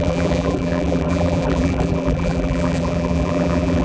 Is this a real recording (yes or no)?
no